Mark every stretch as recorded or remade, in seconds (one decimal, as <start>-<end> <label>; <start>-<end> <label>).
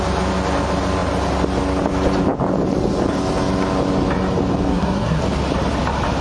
0.0-4.7 recorded; 4.7-5.2 remade; 5.2-6.2 recorded